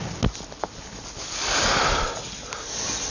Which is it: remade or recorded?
recorded